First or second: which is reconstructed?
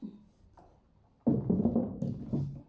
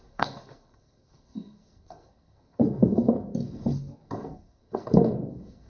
second